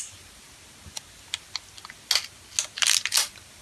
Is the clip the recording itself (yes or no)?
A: yes